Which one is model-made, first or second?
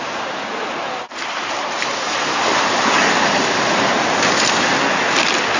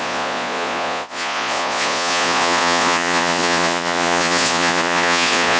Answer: second